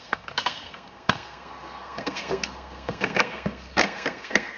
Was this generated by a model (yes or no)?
yes